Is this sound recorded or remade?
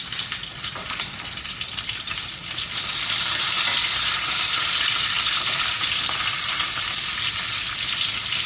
recorded